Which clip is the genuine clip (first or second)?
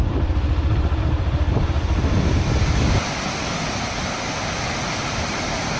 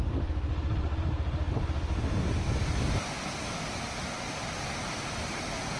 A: second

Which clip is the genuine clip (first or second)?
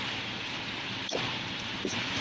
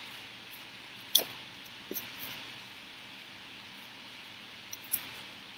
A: second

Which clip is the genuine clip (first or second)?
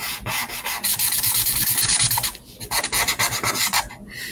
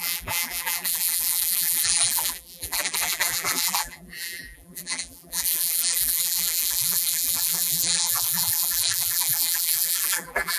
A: first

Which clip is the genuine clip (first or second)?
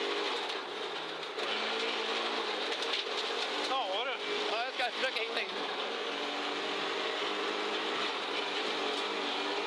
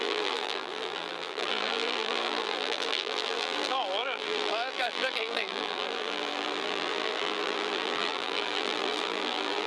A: first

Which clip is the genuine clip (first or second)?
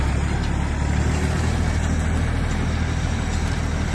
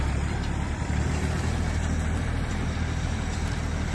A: first